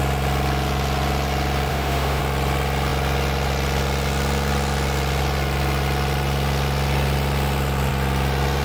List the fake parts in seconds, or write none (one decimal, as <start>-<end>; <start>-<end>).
1.7-2.2